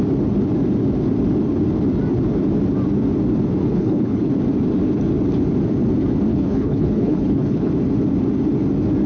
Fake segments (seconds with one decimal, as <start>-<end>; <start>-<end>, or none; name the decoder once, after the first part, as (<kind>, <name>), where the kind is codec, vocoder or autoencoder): 3.6-4.3 (codec, HILCodec); 6.3-7.7